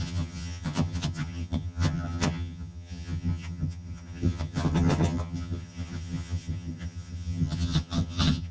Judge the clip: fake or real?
fake